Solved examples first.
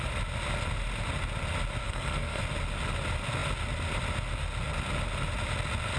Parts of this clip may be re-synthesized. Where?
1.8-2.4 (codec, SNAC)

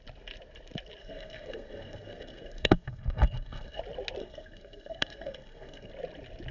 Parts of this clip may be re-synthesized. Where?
1.0-3.8 (codec, SNAC); 4.2-5.9

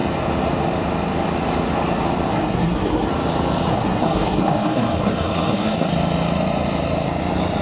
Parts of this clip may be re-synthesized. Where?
2.3-3.1 (codec, SNAC); 3.7-5.9